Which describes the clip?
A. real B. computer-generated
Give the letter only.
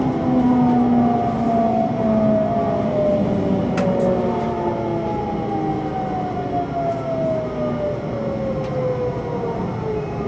A